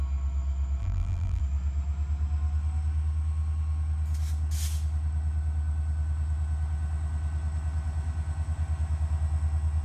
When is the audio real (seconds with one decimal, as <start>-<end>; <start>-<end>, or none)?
0.0-0.8; 1.4-9.8